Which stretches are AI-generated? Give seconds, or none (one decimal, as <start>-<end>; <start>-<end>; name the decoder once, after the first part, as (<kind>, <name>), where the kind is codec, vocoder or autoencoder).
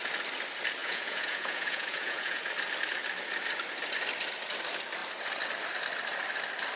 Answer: 0.8-2.4 (vocoder, Vocos)